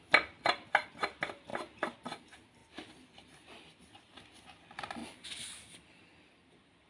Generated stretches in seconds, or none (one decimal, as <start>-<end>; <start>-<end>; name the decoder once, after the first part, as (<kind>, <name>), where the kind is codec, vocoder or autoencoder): none